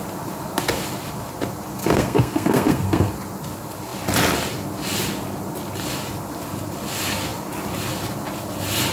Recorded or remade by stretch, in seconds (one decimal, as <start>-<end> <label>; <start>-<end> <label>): 0.0-1.8 recorded; 1.8-3.1 remade; 3.1-8.9 recorded